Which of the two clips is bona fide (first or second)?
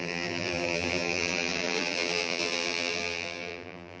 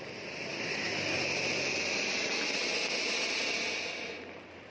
second